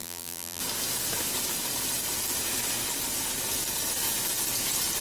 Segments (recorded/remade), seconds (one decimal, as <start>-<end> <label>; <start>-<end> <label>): 0.0-0.6 remade; 0.6-5.0 recorded